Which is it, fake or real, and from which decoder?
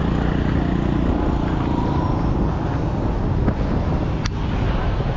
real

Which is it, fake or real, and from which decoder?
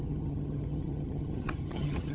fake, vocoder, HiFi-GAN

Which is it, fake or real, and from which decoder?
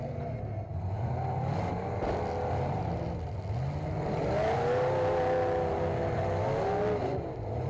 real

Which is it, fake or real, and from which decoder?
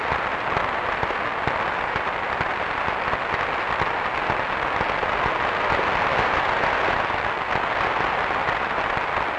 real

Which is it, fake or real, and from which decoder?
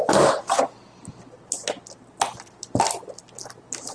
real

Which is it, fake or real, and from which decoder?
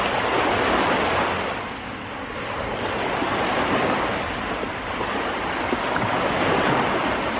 real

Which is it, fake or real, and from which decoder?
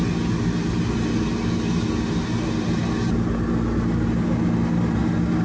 real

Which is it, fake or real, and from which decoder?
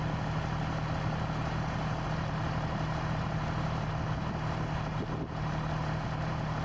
real